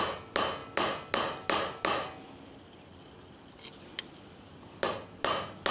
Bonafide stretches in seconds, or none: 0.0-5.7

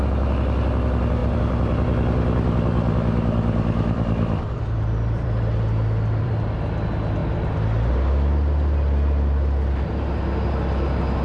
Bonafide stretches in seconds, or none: 0.0-1.2; 6.3-7.2; 7.9-11.2

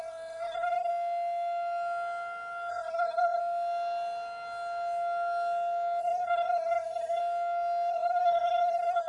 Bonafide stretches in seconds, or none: 0.9-2.7; 3.4-6.0; 7.2-7.9

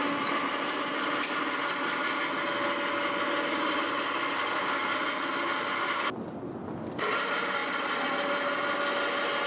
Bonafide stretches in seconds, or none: 0.0-9.5

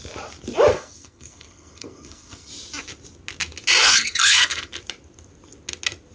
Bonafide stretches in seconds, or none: 0.0-0.7; 2.5-3.8; 4.7-6.1

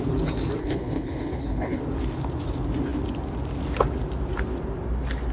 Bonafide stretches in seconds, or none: 0.0-0.6; 1.8-5.3

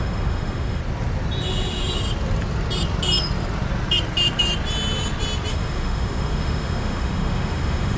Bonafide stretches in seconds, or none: 0.8-5.5